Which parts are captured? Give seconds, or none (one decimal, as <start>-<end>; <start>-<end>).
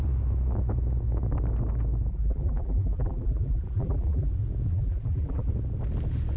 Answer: 0.0-2.1; 4.3-4.7; 5.5-6.4